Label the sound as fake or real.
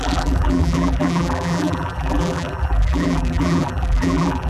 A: fake